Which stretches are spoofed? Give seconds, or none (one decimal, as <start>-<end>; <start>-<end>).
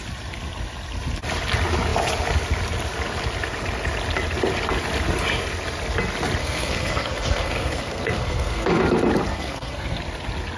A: 6.4-8.8; 9.3-10.0